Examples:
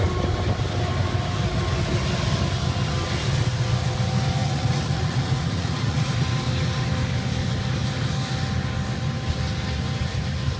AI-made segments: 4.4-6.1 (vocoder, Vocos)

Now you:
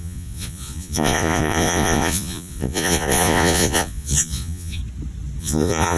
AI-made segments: 0.0-4.8 (vocoder, Vocos); 5.4-6.0

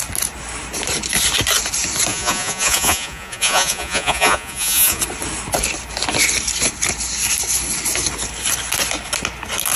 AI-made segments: 2.1-5.0 (vocoder, Vocos)

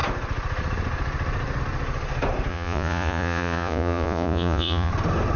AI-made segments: 2.5-4.9 (vocoder, Vocos)

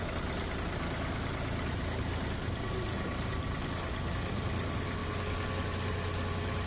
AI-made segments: none